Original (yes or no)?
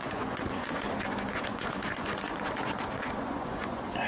no